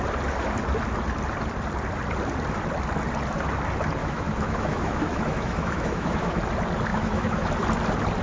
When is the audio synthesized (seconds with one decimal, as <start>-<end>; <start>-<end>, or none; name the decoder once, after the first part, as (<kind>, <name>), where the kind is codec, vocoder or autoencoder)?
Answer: 4.0-6.4 (autoencoder, DAC-VAE); 6.9-7.5